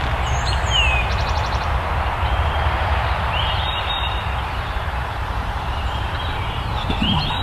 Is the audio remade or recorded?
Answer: remade